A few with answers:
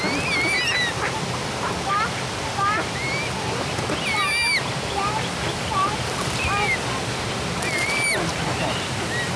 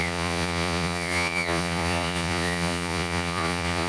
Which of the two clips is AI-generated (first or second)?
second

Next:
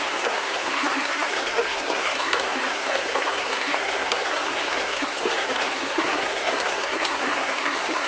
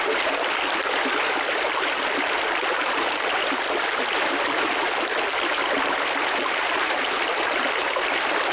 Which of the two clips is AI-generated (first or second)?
first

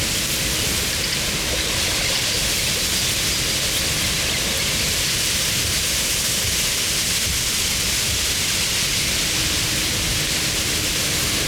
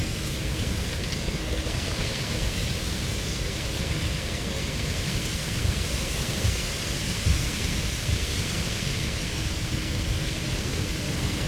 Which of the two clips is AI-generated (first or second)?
second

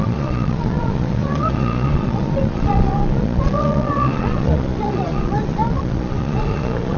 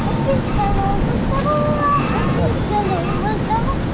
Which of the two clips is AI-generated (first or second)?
first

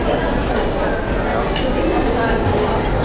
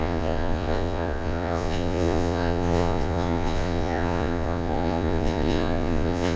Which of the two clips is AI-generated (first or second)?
second